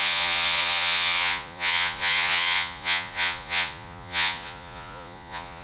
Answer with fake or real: fake